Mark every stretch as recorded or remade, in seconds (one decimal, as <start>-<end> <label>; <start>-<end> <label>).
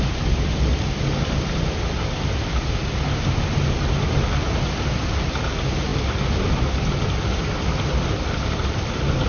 0.0-9.3 recorded